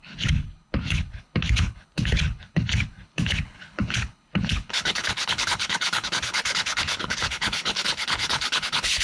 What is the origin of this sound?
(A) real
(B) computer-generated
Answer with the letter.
B